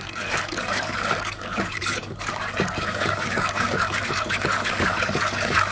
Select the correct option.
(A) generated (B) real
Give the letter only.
A